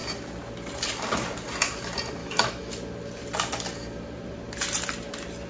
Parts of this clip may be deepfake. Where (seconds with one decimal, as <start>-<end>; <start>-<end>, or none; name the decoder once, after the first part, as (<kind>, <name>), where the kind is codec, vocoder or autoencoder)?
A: 2.2-2.7 (autoencoder, DAC-VAE)